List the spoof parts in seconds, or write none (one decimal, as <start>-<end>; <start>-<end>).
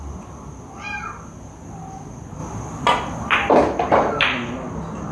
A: none